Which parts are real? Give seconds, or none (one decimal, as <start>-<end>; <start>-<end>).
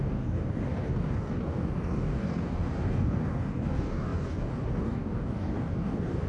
none